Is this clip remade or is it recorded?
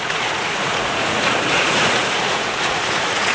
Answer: remade